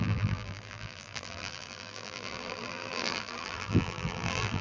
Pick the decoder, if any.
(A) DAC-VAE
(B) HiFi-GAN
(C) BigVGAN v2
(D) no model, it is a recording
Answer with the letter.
C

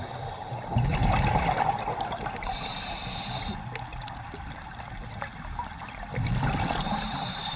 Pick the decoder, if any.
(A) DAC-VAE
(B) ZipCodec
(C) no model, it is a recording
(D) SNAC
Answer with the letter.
C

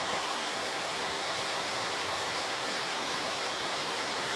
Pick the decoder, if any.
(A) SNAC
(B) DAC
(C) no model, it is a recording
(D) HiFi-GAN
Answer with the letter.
A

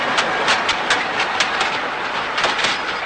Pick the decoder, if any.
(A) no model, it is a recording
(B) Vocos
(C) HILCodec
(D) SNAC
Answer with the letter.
A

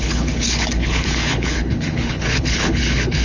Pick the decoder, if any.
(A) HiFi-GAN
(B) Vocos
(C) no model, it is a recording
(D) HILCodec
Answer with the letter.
D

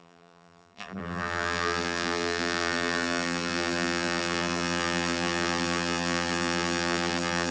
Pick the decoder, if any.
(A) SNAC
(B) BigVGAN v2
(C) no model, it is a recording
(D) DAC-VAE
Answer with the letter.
B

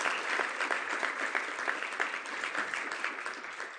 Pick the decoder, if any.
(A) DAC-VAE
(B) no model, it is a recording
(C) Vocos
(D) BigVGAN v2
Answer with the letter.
B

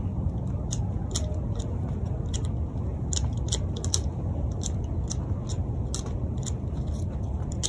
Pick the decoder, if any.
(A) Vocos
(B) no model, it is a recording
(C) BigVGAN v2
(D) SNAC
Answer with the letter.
B